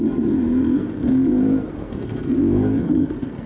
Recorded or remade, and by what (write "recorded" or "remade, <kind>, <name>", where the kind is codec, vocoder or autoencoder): remade, codec, SNAC